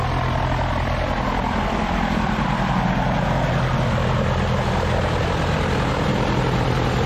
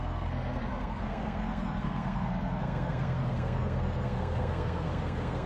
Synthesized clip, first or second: second